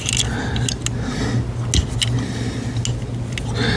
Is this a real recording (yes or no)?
yes